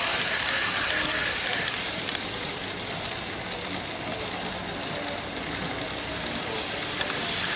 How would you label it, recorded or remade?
recorded